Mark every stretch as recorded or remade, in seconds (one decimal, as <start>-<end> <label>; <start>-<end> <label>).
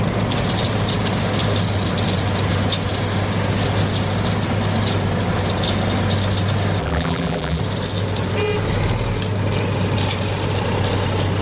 0.0-6.8 recorded; 6.8-7.6 remade; 7.6-11.4 recorded